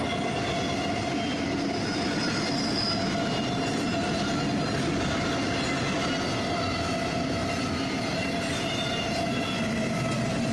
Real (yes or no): yes